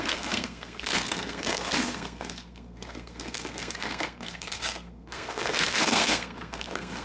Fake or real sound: fake